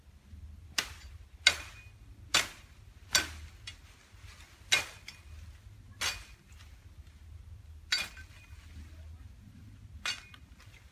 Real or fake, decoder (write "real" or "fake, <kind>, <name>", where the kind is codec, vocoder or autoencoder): real